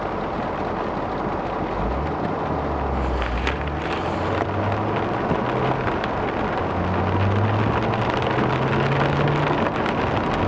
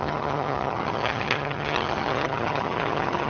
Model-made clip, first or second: second